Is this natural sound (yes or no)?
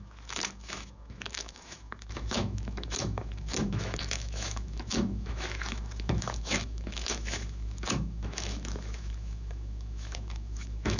no